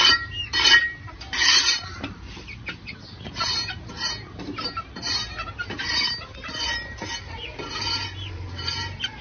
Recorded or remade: remade